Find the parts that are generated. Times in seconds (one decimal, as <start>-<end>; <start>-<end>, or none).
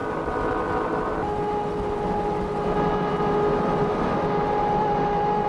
none